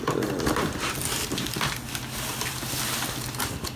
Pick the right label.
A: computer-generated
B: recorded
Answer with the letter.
B